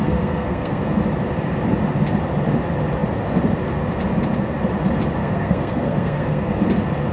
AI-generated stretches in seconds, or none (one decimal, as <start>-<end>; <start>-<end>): 0.0-0.8; 5.2-6.6